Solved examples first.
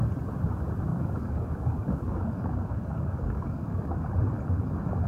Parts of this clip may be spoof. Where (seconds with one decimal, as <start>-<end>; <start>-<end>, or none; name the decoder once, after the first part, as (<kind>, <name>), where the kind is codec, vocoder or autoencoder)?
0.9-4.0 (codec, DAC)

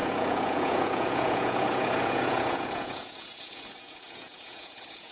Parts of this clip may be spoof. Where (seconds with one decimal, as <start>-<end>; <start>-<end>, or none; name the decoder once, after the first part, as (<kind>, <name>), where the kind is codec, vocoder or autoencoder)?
0.0-5.1 (vocoder, Vocos)

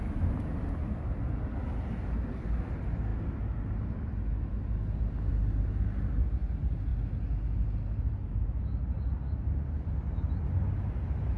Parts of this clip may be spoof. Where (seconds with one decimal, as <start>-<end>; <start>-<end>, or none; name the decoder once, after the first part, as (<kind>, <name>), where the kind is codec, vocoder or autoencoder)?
none

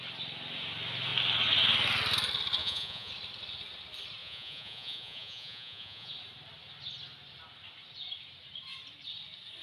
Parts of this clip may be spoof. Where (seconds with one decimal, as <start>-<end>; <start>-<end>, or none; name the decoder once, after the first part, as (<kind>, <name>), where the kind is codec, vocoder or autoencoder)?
2.6-3.1 (vocoder, Vocos); 4.2-6.1

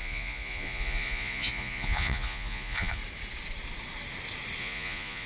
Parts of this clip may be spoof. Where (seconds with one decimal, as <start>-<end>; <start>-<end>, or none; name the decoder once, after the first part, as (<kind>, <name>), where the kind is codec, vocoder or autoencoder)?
0.0-3.0 (vocoder, Vocos); 4.6-5.3

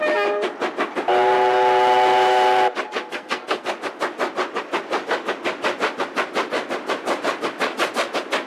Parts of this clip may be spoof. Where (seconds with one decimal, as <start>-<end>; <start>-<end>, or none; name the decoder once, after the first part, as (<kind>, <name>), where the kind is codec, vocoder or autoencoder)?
3.1-3.7 (codec, SNAC)